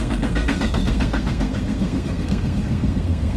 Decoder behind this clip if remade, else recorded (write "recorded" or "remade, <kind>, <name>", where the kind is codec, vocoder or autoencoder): remade, codec, SNAC